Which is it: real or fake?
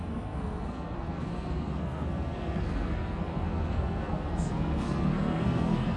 fake